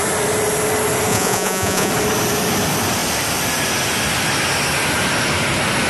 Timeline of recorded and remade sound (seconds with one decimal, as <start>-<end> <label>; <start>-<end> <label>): 0.0-1.1 recorded; 1.1-1.9 remade; 1.9-5.9 recorded